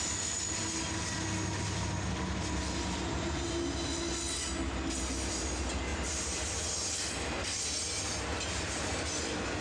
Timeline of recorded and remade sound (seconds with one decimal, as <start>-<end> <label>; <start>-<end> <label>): 0.0-9.6 recorded